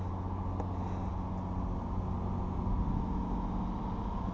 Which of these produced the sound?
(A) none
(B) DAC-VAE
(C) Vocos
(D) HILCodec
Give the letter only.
A